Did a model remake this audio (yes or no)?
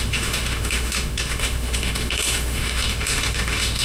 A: yes